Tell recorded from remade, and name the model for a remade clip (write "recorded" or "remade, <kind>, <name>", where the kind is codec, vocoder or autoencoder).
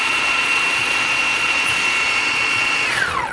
remade, vocoder, Vocos